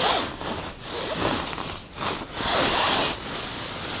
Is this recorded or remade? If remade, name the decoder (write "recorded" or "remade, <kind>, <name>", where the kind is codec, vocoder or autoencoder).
recorded